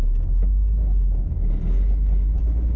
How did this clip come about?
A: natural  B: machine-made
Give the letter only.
A